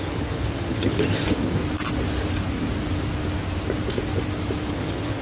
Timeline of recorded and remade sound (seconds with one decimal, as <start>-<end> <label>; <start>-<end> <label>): 0.0-1.6 remade; 1.6-4.7 recorded; 4.7-5.2 remade